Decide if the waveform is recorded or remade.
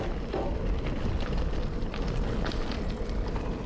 recorded